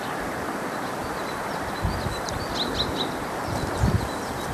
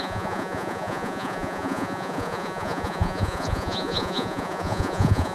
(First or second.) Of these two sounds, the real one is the first